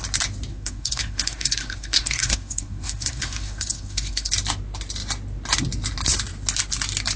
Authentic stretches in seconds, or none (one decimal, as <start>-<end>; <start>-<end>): 0.0-0.5; 4.3-7.2